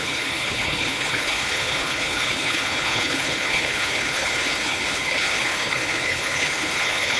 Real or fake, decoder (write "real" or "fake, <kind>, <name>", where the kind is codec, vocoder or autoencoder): fake, codec, HILCodec